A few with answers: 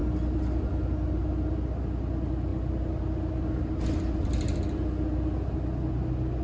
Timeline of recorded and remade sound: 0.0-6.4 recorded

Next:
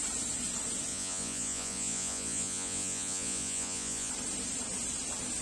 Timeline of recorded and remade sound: 0.0-0.9 recorded; 0.9-4.1 remade; 4.1-5.4 recorded

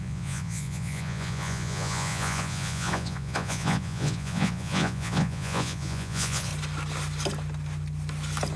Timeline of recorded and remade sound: 0.0-6.5 remade; 6.5-8.6 recorded

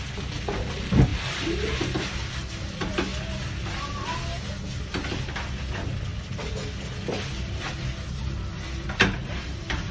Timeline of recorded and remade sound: 0.0-9.9 recorded

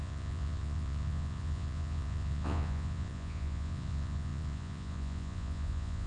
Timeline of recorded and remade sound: 0.0-6.1 remade

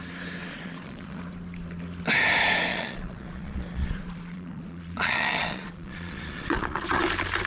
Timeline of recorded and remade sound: 0.0-0.4 recorded; 0.4-1.2 remade; 1.2-2.7 recorded; 2.7-7.0 remade; 7.0-7.5 recorded